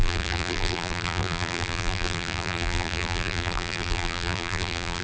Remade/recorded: remade